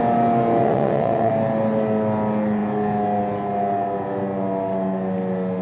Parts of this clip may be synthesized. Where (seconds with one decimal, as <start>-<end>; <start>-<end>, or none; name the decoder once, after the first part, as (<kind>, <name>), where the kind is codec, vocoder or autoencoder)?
0.6-1.3 (vocoder, WaveNeXt)